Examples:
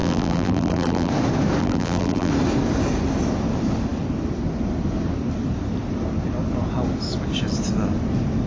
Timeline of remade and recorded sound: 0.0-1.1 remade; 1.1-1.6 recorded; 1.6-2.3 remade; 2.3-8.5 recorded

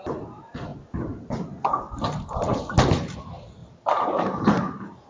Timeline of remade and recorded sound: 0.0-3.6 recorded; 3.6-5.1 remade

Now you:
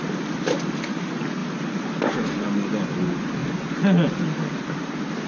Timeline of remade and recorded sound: 0.0-3.4 recorded; 3.4-4.2 remade; 4.2-5.3 recorded

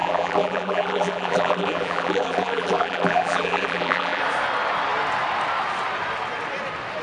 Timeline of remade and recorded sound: 0.0-4.2 remade; 4.2-7.0 recorded